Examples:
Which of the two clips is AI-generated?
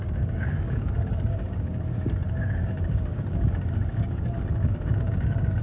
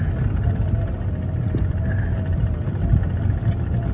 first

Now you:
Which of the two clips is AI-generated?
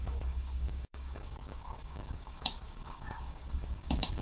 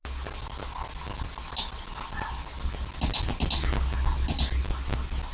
first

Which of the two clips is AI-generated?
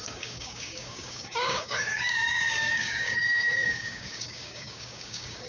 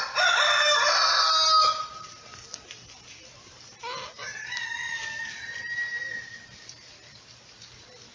first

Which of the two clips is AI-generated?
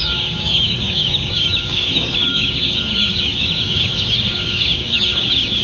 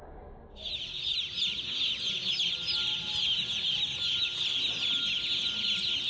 first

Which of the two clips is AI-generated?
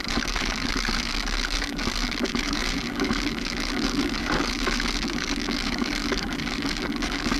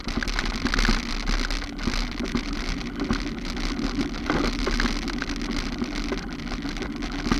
first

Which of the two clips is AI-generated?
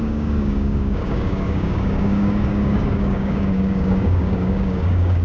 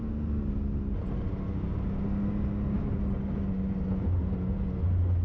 first